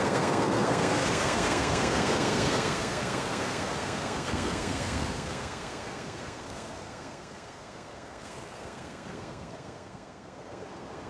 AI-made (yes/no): yes